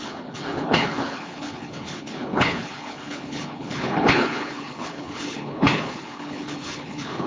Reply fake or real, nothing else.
fake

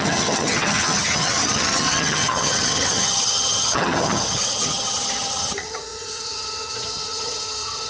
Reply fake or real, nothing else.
fake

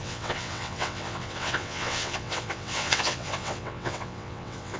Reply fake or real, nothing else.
fake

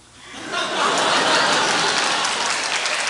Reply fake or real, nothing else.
real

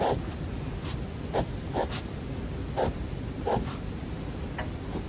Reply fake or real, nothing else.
real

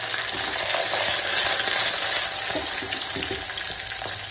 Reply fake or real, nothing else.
real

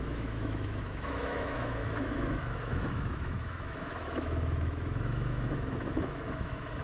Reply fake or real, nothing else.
fake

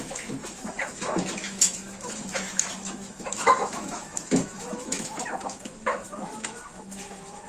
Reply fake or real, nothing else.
fake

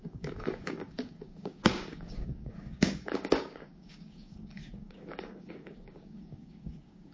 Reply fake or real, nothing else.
fake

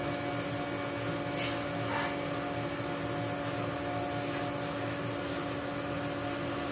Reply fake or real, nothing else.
real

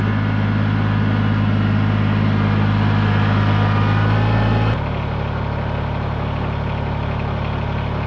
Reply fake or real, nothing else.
real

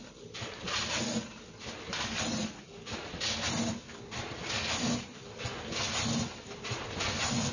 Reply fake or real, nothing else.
real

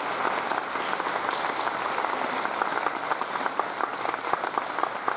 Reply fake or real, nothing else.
real